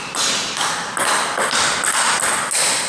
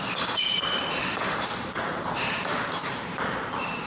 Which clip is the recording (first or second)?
first